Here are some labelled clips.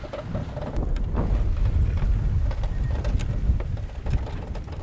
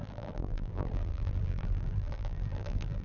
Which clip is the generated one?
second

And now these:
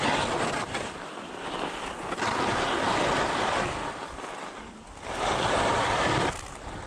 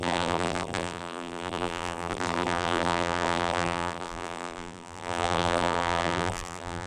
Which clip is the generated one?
second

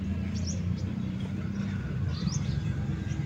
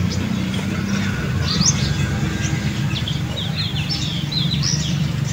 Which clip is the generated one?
first